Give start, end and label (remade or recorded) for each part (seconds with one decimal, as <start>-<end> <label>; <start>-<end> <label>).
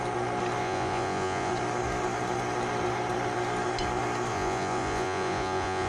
0.0-0.6 recorded; 0.6-1.5 remade; 1.5-4.3 recorded; 4.3-5.9 remade